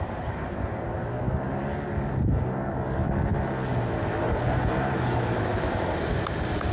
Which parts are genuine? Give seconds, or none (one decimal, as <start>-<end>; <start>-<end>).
1.0-4.2